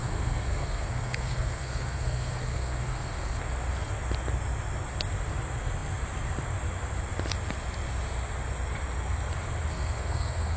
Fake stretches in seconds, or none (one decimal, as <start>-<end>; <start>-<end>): 0.0-3.4; 9.7-10.6